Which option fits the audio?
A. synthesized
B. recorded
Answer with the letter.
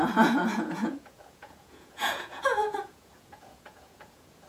A